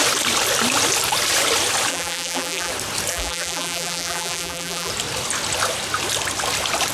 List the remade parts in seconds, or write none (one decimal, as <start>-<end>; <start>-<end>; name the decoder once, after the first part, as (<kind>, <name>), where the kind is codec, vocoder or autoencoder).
1.9-2.7 (vocoder, BigVGAN v2); 3.1-4.9